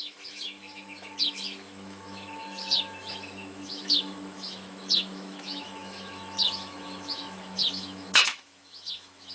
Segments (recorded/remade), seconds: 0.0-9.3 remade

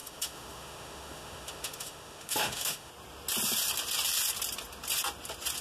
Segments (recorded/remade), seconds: 0.0-2.9 remade; 2.9-5.6 recorded

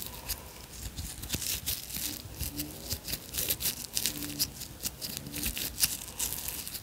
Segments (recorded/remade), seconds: 0.0-6.8 recorded

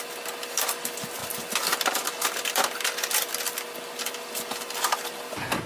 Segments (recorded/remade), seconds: 0.0-5.7 recorded

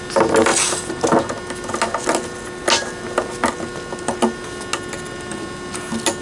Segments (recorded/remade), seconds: 0.0-6.2 recorded